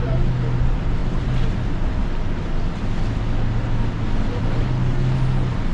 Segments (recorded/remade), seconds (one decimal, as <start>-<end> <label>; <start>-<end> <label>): 0.0-5.7 recorded